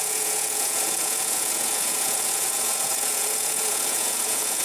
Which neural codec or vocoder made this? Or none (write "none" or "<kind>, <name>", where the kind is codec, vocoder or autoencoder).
vocoder, Vocos